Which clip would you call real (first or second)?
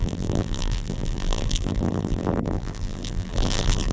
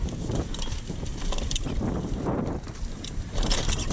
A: second